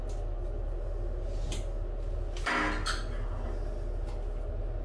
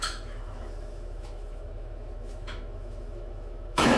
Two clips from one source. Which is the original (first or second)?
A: first